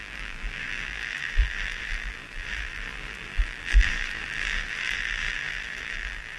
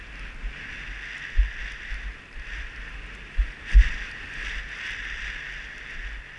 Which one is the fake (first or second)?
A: first